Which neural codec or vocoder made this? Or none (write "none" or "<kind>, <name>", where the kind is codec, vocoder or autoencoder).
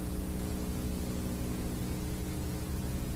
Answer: vocoder, Vocos